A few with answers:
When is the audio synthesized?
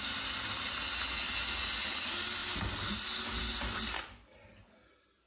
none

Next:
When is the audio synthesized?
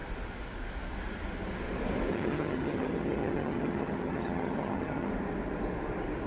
2.1-5.1 (vocoder, HiFi-GAN)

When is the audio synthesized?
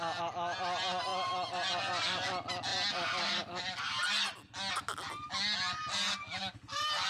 none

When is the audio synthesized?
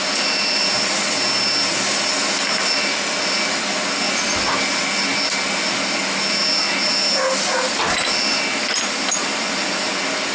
none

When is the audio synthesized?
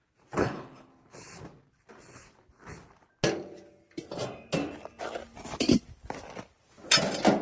0.4-0.9 (codec, HILCodec)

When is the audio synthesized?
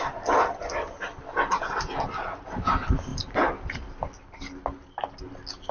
none